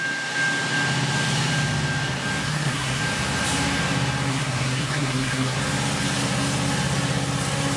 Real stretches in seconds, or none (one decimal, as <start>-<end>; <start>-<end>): 0.0-2.4; 3.0-4.3; 5.6-7.8